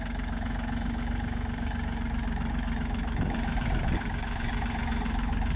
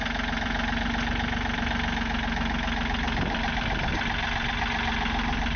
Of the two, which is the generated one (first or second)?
first